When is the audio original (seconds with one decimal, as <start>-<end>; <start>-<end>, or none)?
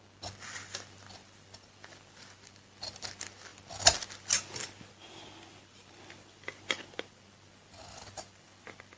0.0-9.0